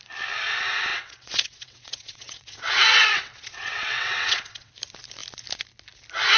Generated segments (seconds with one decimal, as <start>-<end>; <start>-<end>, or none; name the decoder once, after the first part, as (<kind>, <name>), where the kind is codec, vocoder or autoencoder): 0.9-4.7 (vocoder, WaveNeXt)